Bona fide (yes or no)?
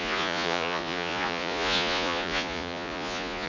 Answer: no